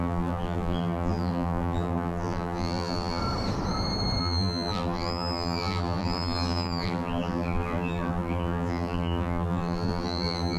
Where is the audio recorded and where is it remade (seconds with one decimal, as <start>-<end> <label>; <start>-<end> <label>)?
0.0-3.2 remade; 3.2-4.2 recorded; 4.2-10.6 remade